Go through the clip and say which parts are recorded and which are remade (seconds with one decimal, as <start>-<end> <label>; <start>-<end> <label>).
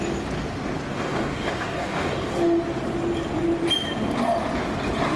0.0-0.9 recorded; 0.9-2.3 remade; 2.3-5.2 recorded